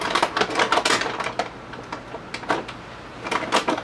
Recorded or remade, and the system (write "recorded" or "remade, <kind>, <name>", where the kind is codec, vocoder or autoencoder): recorded